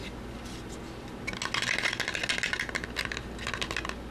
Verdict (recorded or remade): recorded